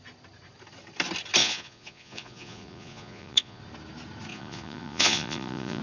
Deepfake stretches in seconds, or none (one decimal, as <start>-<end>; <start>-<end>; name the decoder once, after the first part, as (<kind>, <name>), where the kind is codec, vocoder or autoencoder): 1.4-3.6 (vocoder, Vocos); 4.3-5.8